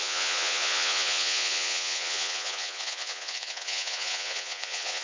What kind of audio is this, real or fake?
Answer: fake